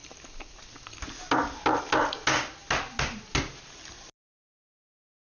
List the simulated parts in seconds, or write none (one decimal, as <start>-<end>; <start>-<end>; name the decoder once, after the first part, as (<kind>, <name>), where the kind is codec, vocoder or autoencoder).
none